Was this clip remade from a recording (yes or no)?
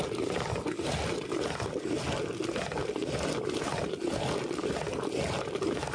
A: no